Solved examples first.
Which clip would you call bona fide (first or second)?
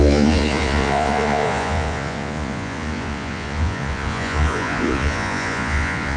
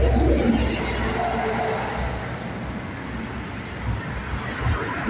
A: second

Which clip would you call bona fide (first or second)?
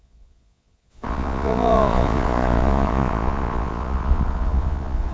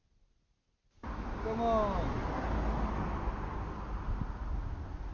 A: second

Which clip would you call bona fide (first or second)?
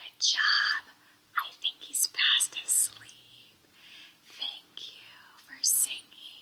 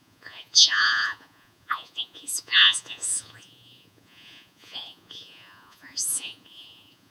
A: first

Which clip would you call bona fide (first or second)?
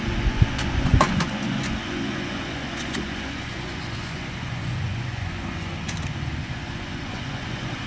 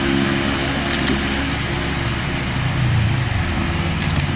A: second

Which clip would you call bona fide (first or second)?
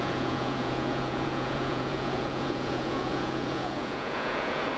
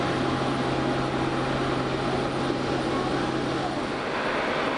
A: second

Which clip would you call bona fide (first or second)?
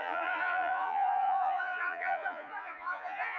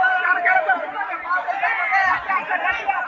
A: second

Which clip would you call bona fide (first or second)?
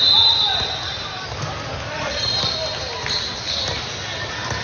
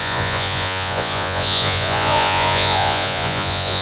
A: first